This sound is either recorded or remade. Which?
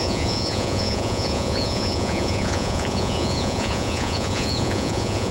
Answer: remade